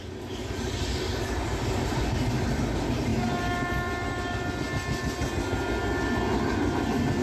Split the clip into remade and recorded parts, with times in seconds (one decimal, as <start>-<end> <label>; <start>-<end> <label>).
0.0-3.1 recorded; 3.1-4.5 remade; 4.5-7.2 recorded